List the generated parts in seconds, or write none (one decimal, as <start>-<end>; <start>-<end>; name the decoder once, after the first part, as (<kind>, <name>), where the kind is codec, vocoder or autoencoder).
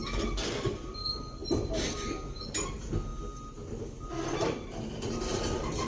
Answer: 4.3-5.9 (vocoder, BigVGAN v2)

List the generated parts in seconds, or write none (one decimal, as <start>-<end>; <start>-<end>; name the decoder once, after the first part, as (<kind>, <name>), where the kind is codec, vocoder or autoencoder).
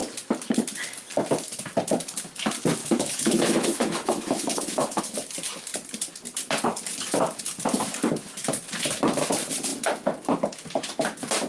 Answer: 2.8-5.0 (autoencoder, DAC-VAE)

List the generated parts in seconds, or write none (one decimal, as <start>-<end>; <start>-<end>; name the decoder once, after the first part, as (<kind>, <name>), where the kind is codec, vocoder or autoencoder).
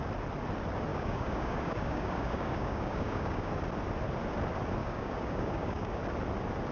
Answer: 0.9-3.5 (codec, DAC); 4.8-6.0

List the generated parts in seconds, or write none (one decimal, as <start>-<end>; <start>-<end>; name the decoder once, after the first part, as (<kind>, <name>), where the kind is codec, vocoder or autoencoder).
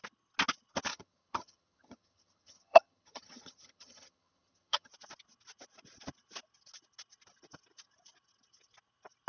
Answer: 0.9-4.9 (vocoder, HiFi-GAN)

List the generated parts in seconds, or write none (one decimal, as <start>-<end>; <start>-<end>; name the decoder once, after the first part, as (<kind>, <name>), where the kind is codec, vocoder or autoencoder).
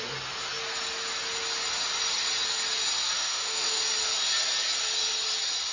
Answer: 3.2-3.8 (autoencoder, DAC-VAE)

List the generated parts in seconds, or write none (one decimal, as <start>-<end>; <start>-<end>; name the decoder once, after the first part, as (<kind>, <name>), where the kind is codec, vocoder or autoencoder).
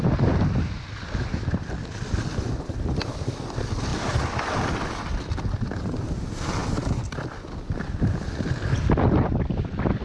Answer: none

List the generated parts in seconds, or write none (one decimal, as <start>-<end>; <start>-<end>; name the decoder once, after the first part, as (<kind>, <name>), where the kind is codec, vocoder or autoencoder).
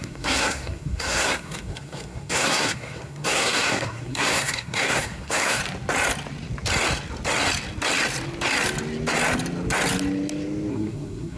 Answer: 0.0-5.6 (codec, SNAC); 10.7-11.4